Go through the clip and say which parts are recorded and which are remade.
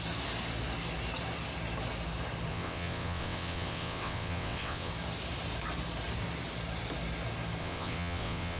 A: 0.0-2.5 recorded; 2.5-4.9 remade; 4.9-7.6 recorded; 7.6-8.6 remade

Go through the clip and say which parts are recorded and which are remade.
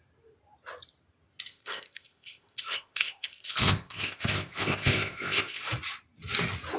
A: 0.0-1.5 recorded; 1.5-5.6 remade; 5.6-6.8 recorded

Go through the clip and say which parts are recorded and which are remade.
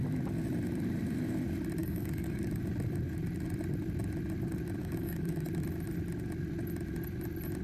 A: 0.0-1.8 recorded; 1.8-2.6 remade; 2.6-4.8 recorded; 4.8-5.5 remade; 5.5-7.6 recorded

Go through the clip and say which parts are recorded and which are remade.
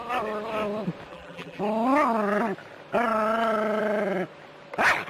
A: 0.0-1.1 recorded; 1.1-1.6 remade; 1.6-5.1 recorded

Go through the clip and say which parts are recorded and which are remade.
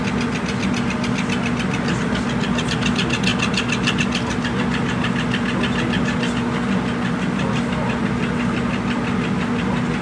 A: 0.0-10.0 recorded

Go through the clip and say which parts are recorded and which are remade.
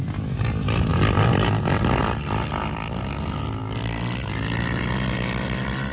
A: 0.0-5.9 recorded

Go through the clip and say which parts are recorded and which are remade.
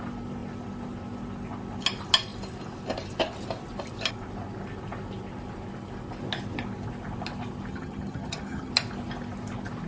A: 0.0-7.7 recorded; 7.7-8.7 remade; 8.7-9.9 recorded